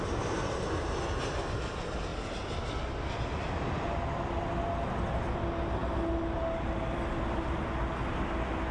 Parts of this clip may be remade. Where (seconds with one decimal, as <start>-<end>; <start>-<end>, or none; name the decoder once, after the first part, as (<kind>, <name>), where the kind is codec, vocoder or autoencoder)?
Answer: none